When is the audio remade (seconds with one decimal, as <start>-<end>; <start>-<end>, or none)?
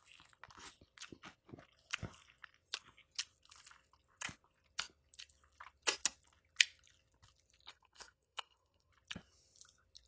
7.7-8.9